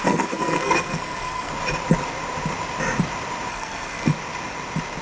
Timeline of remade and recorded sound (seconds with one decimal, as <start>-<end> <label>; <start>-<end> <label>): 0.0-1.5 remade; 1.5-3.5 recorded; 3.5-4.1 remade; 4.1-5.0 recorded